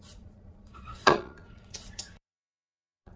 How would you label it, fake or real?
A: fake